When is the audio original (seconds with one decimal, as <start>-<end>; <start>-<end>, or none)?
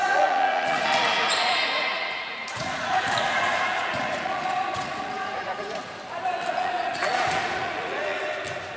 5.8-6.5; 8.2-8.8